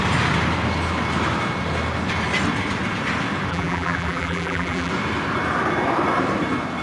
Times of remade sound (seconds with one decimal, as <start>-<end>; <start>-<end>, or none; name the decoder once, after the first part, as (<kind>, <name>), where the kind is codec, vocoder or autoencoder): 3.5-4.9 (vocoder, BigVGAN v2)